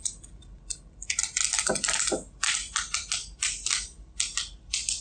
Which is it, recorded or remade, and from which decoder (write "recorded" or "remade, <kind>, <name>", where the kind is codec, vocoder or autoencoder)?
recorded